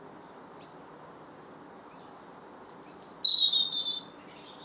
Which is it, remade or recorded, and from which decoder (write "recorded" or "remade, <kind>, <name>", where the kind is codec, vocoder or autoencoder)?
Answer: recorded